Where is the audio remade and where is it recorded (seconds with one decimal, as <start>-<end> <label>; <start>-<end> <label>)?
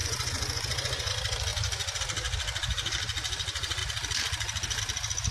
0.0-1.1 remade; 1.1-5.3 recorded